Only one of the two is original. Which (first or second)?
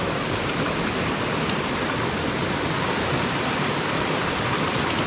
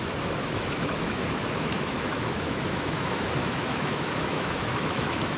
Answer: first